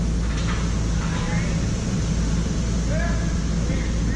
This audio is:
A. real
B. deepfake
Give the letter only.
A